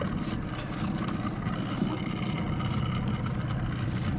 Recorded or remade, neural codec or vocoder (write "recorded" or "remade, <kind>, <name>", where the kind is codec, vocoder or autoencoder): recorded